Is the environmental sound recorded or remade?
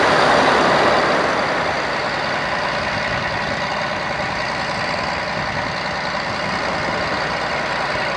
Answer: recorded